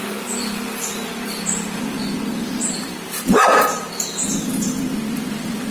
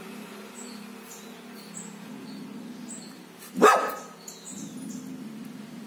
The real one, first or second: second